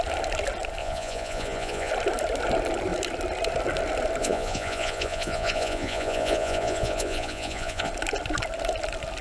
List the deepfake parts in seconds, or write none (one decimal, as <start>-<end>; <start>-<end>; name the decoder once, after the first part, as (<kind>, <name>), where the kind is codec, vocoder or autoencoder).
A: 0.8-1.9 (vocoder, Vocos); 4.2-7.9